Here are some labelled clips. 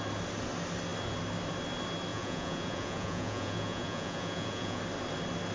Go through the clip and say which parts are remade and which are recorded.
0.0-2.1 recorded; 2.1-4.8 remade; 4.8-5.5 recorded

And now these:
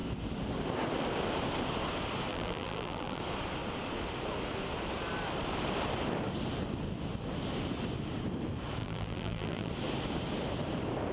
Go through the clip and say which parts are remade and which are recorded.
0.0-2.3 recorded; 2.3-3.2 remade; 3.2-8.8 recorded; 8.8-9.7 remade; 9.7-11.1 recorded

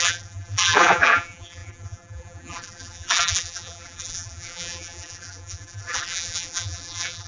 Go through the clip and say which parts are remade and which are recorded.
0.0-7.3 remade

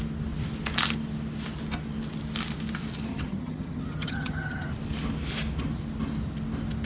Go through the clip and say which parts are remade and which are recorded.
0.0-3.1 recorded; 3.1-4.7 remade; 4.7-6.8 recorded

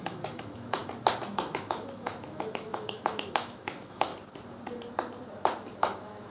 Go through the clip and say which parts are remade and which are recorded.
0.0-0.8 remade; 0.8-1.3 recorded; 1.3-4.1 remade; 4.1-5.8 recorded; 5.8-6.3 remade

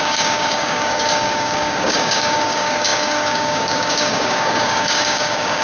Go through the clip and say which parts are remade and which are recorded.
0.0-5.6 remade

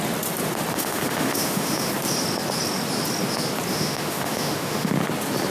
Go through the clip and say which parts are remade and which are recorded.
0.0-0.7 recorded; 0.7-1.9 remade; 1.9-3.7 recorded; 3.7-4.9 remade; 4.9-5.5 recorded

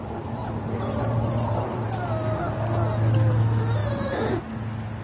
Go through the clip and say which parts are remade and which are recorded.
0.0-0.4 recorded; 0.4-1.8 remade; 1.8-3.8 recorded; 3.8-4.4 remade; 4.4-5.0 recorded